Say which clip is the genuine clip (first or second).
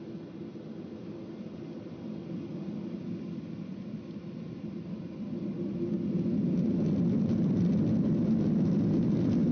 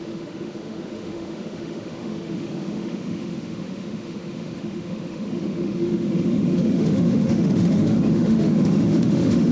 first